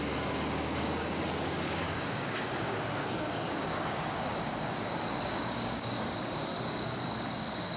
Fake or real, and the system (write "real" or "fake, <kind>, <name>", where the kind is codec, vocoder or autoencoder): fake, codec, DAC